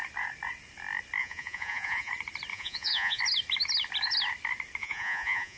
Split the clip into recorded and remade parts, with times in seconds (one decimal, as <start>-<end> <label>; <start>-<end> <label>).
0.0-1.2 recorded; 1.2-2.1 remade; 2.1-2.5 recorded; 2.5-3.2 remade; 3.2-4.8 recorded; 4.8-5.6 remade